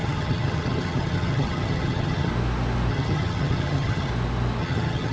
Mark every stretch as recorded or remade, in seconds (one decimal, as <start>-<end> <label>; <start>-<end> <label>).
0.0-2.3 remade; 2.3-2.9 recorded; 2.9-4.1 remade; 4.1-4.6 recorded; 4.6-5.1 remade